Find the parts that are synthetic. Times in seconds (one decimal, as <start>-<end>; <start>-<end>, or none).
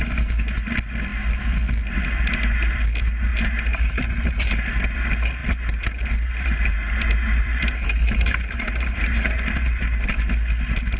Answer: 3.3-4.5; 5.4-10.0